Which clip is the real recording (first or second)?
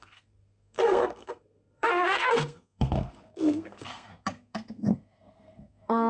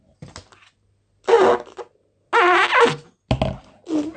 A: second